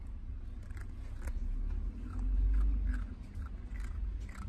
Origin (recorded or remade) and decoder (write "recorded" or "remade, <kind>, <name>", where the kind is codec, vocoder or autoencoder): recorded